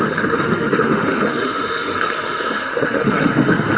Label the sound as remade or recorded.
remade